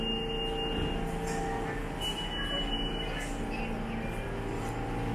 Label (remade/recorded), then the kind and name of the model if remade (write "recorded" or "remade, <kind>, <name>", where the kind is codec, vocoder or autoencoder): recorded